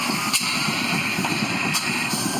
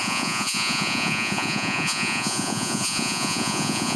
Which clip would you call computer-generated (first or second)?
second